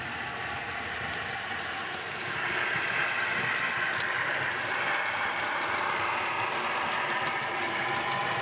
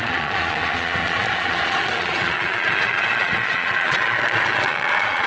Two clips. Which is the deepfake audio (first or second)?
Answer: second